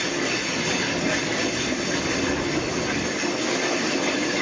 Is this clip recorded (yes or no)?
yes